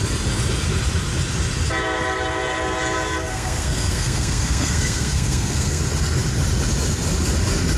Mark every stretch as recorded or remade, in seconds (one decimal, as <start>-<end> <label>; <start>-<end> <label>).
0.0-3.3 recorded; 3.3-5.8 remade; 5.8-7.8 recorded